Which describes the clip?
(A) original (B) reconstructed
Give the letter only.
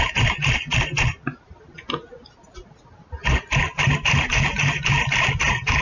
A